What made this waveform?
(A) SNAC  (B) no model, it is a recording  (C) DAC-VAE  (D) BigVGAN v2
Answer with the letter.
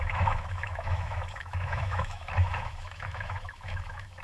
C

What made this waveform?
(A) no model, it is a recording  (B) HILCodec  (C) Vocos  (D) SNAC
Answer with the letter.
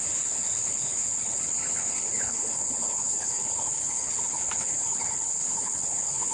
B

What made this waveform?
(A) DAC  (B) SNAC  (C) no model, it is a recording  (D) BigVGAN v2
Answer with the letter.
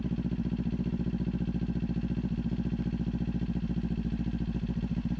C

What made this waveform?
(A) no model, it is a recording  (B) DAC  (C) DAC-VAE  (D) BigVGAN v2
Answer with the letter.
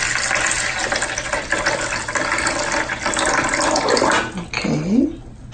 A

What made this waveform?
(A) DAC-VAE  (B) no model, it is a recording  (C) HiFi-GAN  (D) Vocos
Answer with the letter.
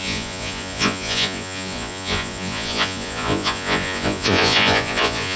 D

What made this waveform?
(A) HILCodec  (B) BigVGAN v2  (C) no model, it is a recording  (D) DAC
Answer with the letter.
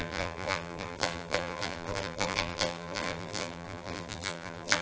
B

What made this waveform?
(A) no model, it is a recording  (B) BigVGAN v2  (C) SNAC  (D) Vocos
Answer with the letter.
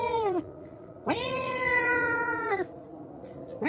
D